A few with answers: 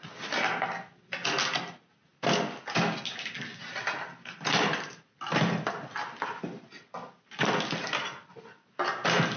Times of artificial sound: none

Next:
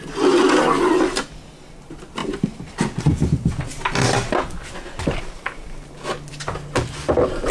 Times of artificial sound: none

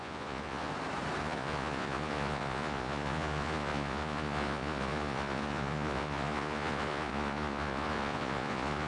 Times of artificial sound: 0.0-0.7 (vocoder, Vocos); 1.2-8.9